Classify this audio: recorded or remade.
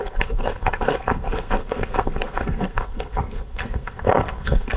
remade